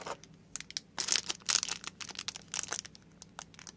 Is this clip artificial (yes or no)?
no